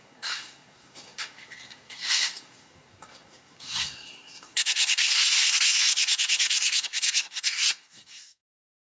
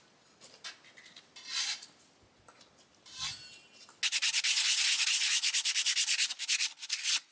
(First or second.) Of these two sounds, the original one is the second